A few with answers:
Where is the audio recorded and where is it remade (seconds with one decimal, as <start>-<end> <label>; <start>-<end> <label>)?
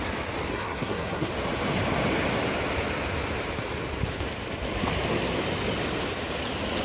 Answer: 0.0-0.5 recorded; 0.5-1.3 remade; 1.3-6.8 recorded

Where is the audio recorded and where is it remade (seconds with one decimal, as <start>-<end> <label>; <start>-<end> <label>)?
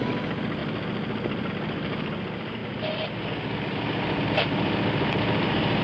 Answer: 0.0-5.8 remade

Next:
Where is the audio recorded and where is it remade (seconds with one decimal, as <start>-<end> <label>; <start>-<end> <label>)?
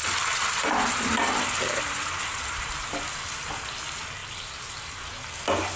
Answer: 0.0-5.8 recorded